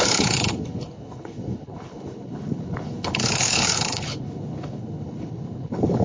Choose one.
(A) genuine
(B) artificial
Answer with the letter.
B